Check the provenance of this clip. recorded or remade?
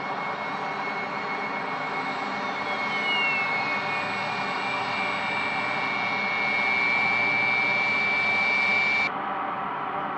recorded